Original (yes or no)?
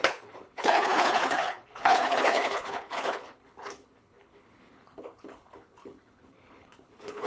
no